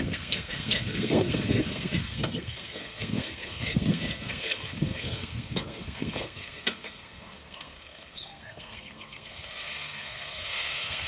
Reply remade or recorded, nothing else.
remade